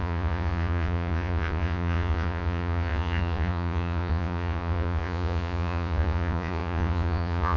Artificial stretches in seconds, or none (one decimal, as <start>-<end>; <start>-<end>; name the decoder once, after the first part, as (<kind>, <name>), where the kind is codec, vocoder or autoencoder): 0.0-7.6 (vocoder, Vocos)

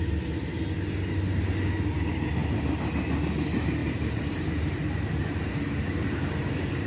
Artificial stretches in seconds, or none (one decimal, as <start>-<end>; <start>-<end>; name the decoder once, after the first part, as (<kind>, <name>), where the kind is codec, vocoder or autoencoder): 3.8-6.9 (vocoder, BigVGAN v2)

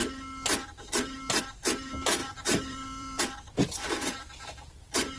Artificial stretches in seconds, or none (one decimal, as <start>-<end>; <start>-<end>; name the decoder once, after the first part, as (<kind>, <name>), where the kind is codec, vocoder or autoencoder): 2.2-3.2 (vocoder, BigVGAN v2)

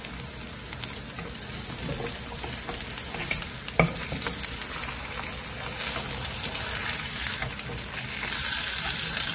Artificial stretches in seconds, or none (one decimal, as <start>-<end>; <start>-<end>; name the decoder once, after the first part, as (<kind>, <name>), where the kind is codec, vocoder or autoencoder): none

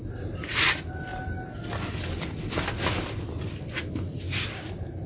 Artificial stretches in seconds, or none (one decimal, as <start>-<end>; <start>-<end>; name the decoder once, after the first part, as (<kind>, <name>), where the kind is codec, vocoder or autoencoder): none

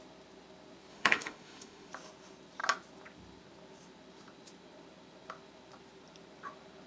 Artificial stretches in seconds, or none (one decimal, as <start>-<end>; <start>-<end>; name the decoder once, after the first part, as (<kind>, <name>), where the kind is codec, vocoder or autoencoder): 0.9-1.9 (autoencoder, DAC-VAE)

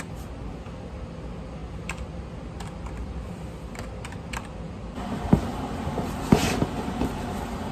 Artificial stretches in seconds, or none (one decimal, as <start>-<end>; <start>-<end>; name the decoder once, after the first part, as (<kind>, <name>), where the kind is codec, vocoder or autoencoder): none

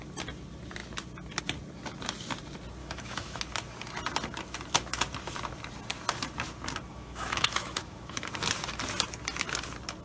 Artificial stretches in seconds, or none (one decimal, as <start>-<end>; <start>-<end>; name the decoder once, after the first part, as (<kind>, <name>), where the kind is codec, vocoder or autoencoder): 2.8-3.4 (autoencoder, DAC-VAE); 6.9-8.3